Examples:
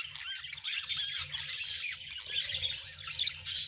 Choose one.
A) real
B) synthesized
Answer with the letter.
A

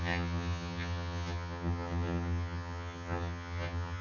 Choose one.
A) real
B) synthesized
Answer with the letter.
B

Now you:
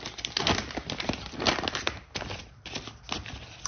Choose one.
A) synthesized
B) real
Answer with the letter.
B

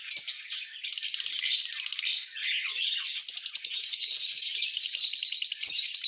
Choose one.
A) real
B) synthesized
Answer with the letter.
A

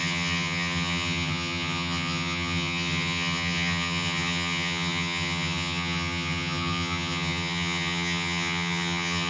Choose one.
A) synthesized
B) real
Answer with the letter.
A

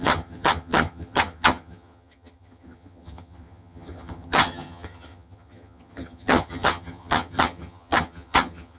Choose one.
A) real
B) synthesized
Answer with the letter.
B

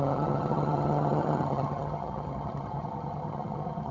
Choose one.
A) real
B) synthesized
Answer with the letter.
B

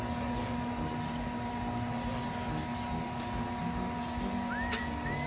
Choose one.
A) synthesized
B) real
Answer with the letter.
B